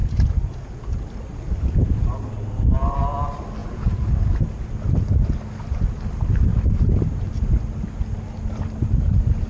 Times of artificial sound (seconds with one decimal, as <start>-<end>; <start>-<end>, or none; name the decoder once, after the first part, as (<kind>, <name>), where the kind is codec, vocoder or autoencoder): 0.0-1.0 (vocoder, Vocos); 3.6-4.1